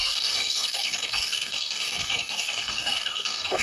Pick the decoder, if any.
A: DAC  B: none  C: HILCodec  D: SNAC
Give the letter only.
A